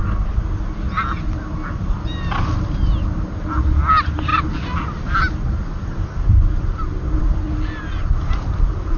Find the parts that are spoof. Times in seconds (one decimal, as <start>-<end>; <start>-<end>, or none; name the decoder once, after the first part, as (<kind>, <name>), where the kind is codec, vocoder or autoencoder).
none